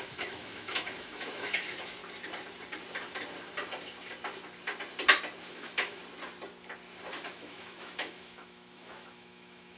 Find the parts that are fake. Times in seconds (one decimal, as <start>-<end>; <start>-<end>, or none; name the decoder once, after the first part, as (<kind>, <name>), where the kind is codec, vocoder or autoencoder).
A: 0.0-2.0 (autoencoder, DAC-VAE); 5.4-6.0; 7.3-9.8